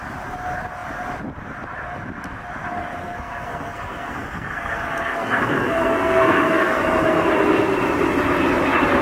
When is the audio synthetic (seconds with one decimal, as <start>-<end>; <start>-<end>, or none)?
3.0-7.3